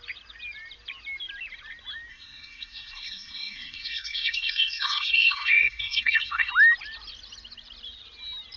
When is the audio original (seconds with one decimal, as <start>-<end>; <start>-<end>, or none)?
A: 0.0-2.1; 6.5-8.6